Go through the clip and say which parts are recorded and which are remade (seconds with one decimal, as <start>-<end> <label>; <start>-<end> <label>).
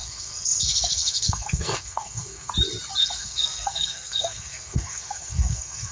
0.0-2.5 remade; 2.5-3.0 recorded; 3.0-5.9 remade